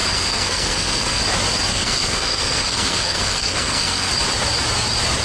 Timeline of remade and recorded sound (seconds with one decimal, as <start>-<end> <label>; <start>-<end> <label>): 0.0-1.2 remade; 1.2-1.7 recorded; 1.7-4.1 remade; 4.1-5.2 recorded

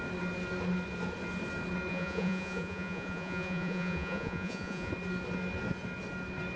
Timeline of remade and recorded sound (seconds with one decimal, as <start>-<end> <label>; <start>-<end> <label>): 0.0-1.9 recorded; 1.9-4.9 remade; 4.9-6.6 recorded